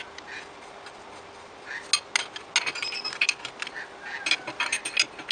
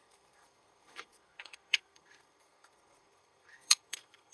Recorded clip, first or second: first